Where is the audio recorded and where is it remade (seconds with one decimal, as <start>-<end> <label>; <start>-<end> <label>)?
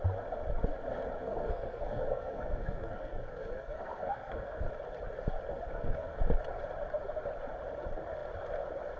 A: 0.0-1.2 recorded; 1.2-4.7 remade; 4.7-5.5 recorded; 5.5-6.2 remade; 6.2-9.0 recorded